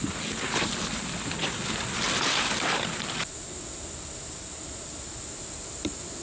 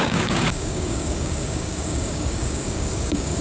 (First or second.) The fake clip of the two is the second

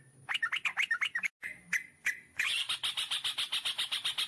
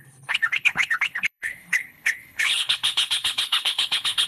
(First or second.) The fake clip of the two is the second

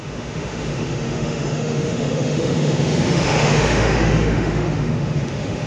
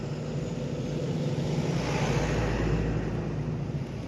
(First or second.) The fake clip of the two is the first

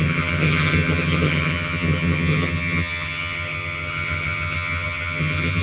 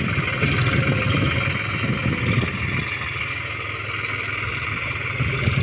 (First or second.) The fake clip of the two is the first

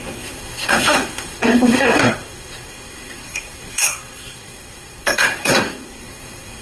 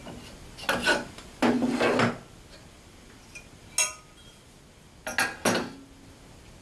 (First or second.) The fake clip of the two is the first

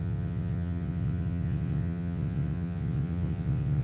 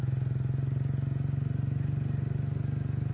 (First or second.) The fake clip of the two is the first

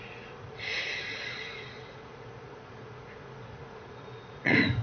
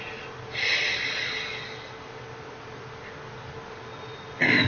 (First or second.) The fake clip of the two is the first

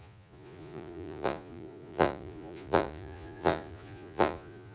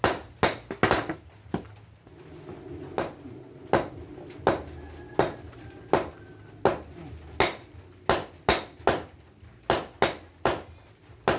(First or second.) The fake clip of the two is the first